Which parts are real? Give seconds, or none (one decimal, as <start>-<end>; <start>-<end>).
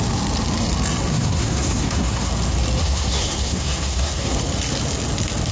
0.0-1.1; 2.3-2.8; 4.4-5.5